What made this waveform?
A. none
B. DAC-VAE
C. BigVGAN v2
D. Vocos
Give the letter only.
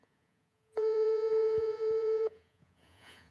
D